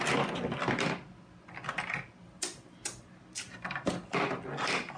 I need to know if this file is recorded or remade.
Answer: recorded